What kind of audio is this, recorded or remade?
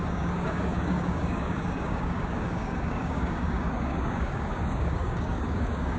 remade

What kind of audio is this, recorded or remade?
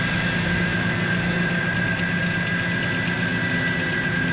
recorded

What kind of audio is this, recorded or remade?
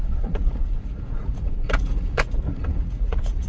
remade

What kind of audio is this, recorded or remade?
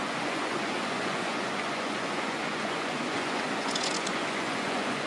remade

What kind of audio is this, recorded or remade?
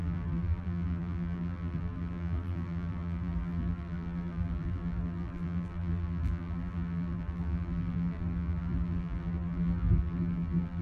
remade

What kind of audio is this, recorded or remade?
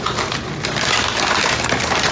recorded